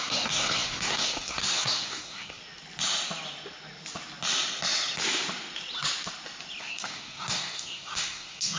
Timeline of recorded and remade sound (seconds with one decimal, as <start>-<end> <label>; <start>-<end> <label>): 0.0-2.4 remade; 2.4-6.6 recorded; 6.6-8.6 remade